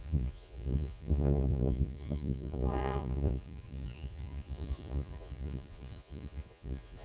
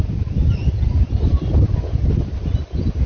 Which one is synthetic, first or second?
first